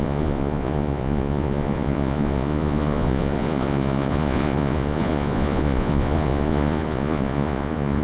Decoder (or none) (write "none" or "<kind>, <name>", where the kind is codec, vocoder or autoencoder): vocoder, Vocos